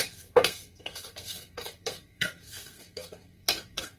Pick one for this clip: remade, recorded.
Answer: remade